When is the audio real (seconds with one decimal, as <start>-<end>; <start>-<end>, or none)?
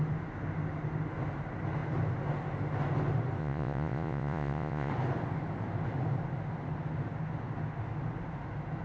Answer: 0.0-3.4; 4.9-8.8